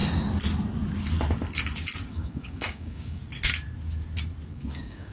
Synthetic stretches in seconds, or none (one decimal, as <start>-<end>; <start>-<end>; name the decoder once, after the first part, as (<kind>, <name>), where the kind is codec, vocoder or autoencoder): 2.1-3.2 (codec, DAC); 4.5-5.1